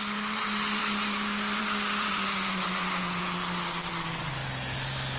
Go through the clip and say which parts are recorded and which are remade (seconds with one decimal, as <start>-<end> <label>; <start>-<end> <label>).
0.0-4.4 remade; 4.4-5.2 recorded